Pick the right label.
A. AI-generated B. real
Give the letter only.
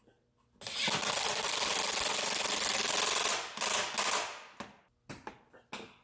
B